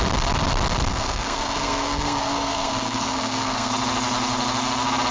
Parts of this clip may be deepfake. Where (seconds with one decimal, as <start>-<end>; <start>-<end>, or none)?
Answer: 0.9-3.7